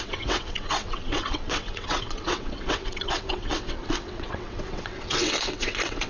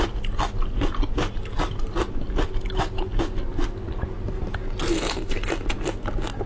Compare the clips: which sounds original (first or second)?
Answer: second